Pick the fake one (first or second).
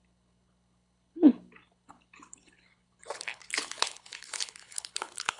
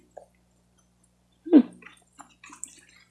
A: first